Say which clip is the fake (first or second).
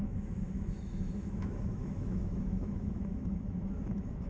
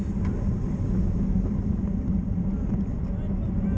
first